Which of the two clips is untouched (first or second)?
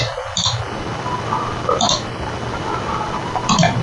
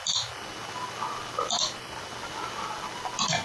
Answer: second